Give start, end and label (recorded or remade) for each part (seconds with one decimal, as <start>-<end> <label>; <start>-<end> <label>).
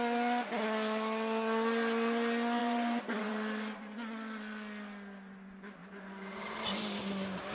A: 0.0-2.6 recorded; 2.6-3.3 remade; 3.3-5.8 recorded; 5.8-6.6 remade; 6.6-7.5 recorded